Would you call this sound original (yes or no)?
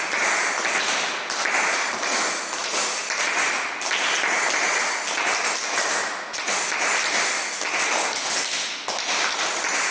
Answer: yes